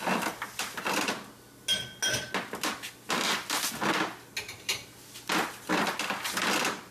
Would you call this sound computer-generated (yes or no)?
no